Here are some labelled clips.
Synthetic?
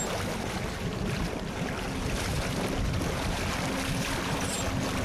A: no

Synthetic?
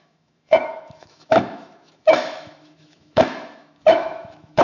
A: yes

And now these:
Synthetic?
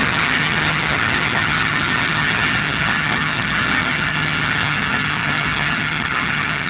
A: yes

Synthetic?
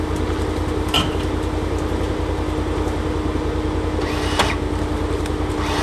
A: no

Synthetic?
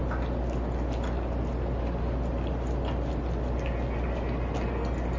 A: no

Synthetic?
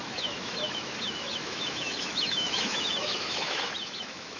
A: yes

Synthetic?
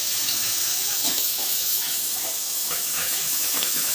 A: yes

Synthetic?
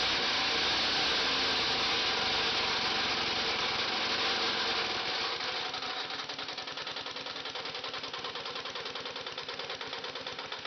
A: no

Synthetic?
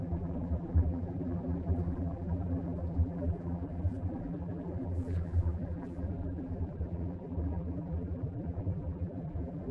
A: yes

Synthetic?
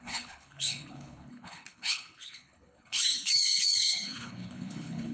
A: yes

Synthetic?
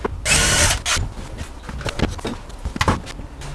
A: no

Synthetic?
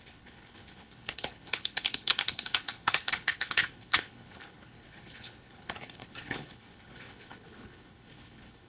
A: yes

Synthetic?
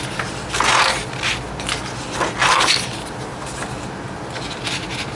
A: no